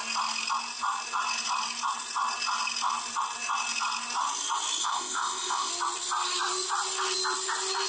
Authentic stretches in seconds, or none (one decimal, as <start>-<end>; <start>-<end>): 0.0-4.8; 5.7-7.9